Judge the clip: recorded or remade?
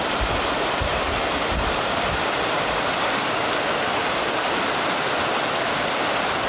recorded